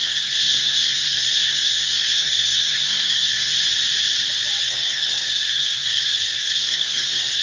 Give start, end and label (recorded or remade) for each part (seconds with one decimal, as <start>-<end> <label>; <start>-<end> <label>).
0.0-3.5 remade; 3.5-4.6 recorded; 4.6-7.4 remade